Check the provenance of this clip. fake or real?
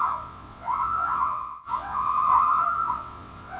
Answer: fake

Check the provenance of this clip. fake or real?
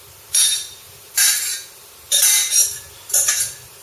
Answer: fake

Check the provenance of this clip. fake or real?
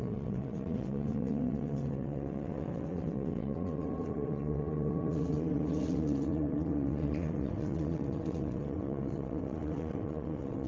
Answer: fake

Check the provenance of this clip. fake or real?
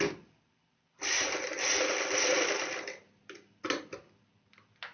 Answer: real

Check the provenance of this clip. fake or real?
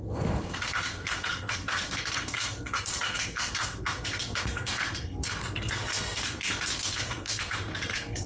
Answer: fake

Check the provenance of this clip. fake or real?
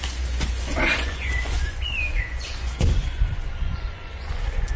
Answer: fake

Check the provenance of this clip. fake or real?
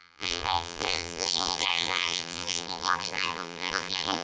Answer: fake